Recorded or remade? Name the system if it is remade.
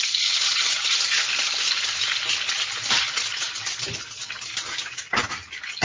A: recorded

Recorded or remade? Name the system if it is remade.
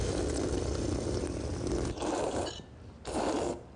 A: recorded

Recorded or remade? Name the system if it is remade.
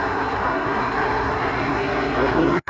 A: remade, codec, SNAC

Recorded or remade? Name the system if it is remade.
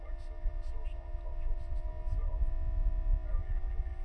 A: recorded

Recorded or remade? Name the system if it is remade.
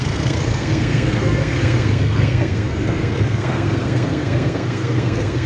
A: remade, codec, SNAC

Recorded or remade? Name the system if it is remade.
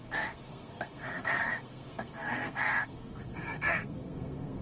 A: remade, codec, SNAC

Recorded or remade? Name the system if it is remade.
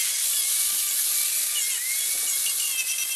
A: recorded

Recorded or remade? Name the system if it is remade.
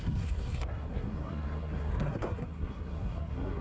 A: remade, codec, SNAC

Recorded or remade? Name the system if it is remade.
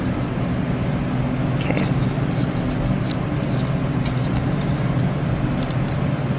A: recorded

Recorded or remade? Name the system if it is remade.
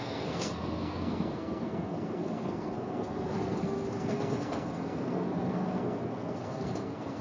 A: remade, codec, SNAC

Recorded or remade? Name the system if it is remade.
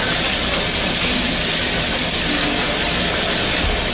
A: recorded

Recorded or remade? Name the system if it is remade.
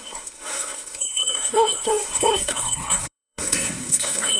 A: remade, codec, SNAC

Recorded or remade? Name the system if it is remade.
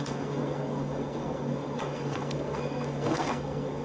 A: remade, codec, SNAC